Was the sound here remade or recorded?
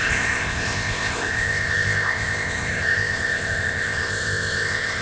remade